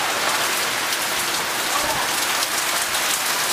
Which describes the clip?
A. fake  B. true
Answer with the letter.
B